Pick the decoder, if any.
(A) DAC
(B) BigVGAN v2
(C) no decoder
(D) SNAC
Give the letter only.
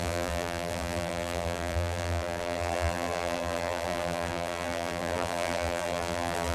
B